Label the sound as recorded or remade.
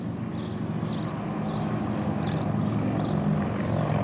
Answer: recorded